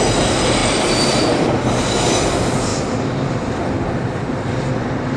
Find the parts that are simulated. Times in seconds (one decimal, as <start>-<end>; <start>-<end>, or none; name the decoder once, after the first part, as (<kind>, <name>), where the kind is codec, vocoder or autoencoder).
0.6-1.5 (vocoder, BigVGAN v2)